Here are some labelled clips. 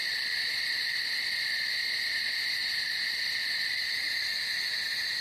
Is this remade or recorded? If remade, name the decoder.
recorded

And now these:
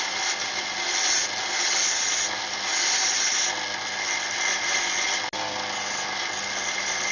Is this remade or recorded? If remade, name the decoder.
recorded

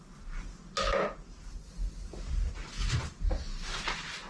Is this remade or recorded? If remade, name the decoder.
recorded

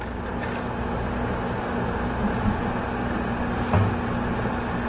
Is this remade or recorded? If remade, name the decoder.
recorded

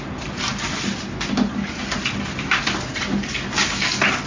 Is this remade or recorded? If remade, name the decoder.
recorded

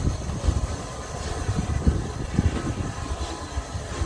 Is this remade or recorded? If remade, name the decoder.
recorded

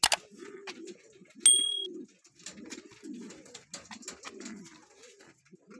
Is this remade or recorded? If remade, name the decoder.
recorded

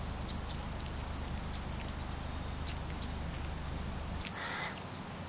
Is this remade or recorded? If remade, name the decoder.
recorded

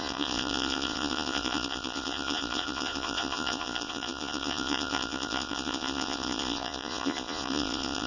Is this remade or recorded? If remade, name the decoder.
remade, vocoder, Vocos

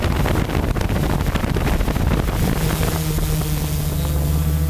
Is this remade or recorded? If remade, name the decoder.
recorded